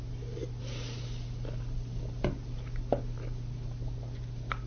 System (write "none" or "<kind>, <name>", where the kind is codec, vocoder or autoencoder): none